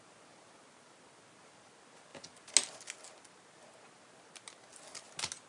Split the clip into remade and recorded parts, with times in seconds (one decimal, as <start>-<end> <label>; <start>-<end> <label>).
0.0-5.5 recorded